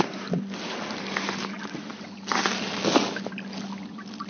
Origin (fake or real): real